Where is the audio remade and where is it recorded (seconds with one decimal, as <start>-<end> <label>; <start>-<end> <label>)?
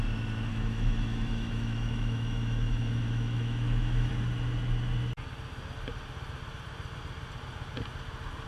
0.0-0.5 recorded; 0.5-4.1 remade; 4.1-8.5 recorded